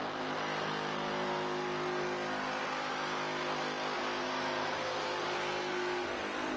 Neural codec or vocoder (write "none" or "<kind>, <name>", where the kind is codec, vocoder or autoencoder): none